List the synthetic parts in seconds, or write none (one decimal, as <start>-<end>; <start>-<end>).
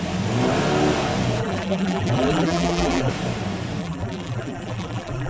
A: 1.4-3.1; 3.8-5.3